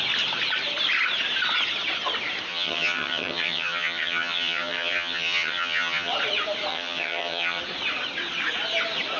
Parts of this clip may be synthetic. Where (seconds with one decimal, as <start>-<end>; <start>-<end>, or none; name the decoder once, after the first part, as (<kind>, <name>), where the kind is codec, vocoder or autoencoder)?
2.5-6.1 (vocoder, HiFi-GAN); 6.7-7.6